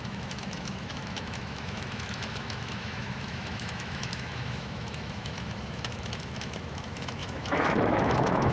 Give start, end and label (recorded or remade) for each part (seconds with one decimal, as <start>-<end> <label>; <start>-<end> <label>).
0.0-8.5 remade